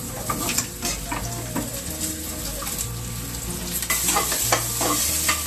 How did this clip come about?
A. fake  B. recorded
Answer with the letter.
B